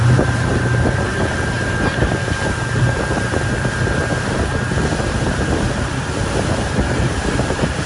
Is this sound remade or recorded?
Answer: remade